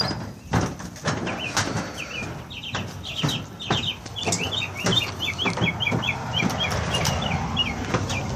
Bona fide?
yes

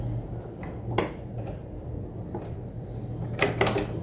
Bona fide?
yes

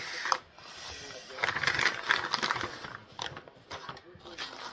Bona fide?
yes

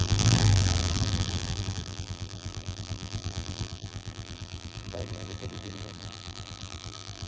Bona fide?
no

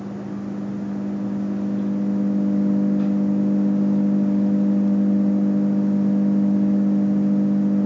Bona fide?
yes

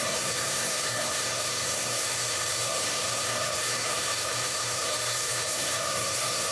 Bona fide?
no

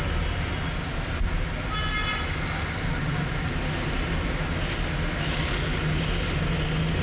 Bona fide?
yes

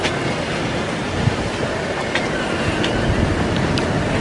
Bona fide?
yes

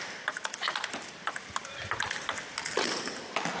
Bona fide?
yes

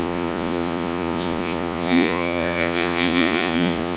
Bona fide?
no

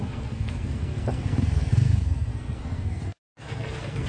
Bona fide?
no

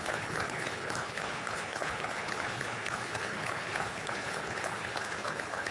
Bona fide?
no